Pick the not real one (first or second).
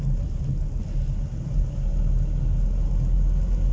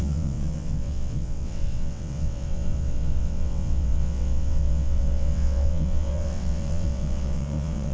second